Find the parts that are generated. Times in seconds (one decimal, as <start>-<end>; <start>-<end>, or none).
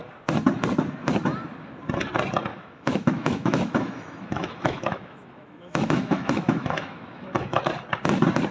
2.5-7.6